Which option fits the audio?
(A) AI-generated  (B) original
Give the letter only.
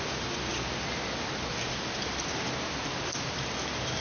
B